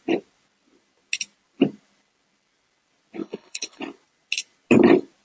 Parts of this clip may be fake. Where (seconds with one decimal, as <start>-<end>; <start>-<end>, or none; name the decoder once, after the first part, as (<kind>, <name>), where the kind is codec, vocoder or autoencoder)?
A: 3.2-3.8 (codec, HILCodec)

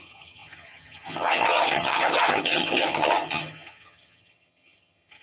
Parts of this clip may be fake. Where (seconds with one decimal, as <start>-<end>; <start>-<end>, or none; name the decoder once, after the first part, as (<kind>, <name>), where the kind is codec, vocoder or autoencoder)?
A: 0.0-5.2 (vocoder, HiFi-GAN)

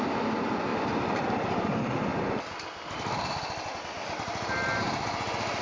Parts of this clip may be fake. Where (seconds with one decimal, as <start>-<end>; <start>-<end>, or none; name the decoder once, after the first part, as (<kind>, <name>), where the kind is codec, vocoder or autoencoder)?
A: none